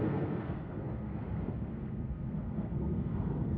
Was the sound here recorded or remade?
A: remade